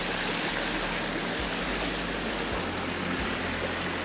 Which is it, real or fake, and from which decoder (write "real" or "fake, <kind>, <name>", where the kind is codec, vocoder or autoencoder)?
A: real